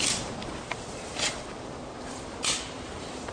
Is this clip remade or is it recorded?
recorded